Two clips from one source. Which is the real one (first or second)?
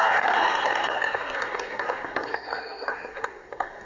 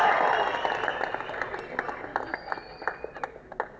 second